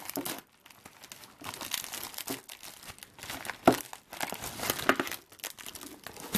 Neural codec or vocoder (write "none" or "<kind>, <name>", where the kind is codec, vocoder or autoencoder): none